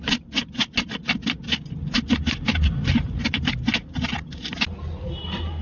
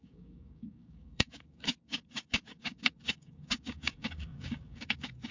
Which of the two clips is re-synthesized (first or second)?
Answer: second